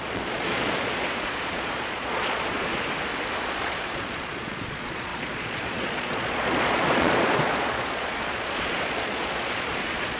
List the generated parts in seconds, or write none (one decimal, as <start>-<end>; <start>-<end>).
0.0-2.7; 3.4-10.2